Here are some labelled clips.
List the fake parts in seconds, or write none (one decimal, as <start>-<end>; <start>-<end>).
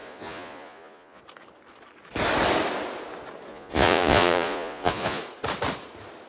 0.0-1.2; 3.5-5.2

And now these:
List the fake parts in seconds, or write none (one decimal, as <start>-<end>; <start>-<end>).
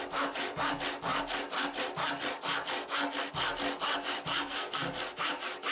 4.4-4.9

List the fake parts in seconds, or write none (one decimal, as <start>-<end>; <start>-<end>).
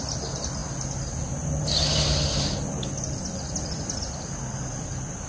none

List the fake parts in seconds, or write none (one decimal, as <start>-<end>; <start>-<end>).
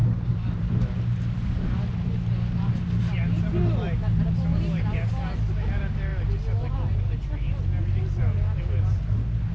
none